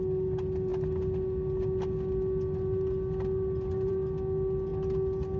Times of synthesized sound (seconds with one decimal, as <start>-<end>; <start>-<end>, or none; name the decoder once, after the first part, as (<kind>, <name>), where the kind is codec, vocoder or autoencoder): none